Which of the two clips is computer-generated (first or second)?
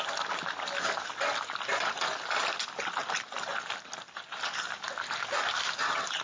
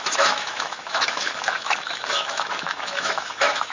second